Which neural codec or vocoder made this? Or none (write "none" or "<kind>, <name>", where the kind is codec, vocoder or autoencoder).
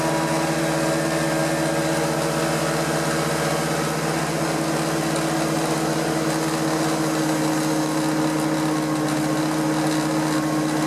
none